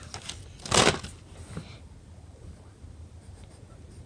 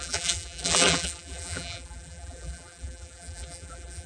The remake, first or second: second